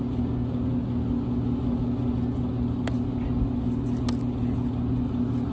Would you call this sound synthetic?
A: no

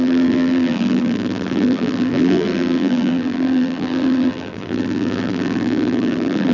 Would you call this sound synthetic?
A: yes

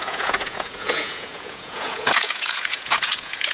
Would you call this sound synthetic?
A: yes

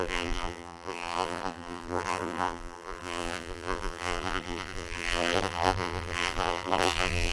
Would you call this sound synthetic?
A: yes